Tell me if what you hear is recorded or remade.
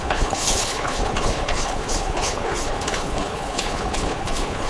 remade